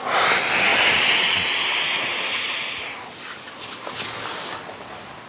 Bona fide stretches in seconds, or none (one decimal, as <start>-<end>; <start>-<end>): 0.0-5.3